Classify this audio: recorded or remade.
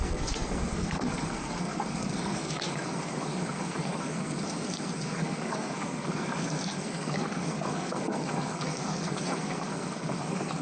remade